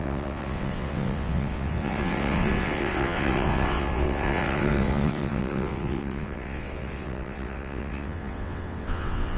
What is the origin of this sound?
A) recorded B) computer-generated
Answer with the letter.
B